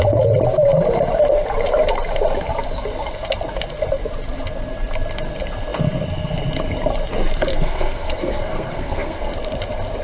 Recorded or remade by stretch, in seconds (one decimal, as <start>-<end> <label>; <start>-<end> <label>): 0.0-7.5 recorded; 7.5-9.3 remade; 9.3-10.0 recorded